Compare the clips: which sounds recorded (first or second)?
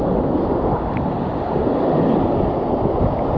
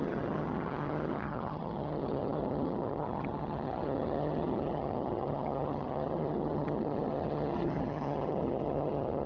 first